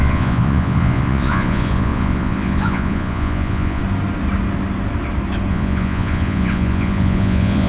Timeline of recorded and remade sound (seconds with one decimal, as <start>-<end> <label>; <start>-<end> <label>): 0.0-3.8 remade; 3.8-5.5 recorded; 5.5-7.7 remade